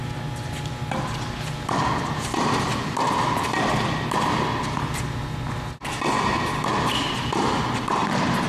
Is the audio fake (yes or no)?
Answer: no